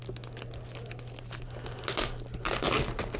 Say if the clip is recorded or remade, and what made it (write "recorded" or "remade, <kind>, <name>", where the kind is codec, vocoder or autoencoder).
recorded